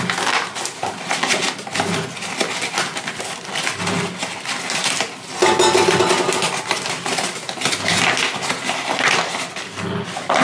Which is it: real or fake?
real